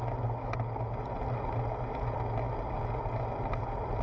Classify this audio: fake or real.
real